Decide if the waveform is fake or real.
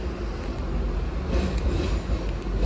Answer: real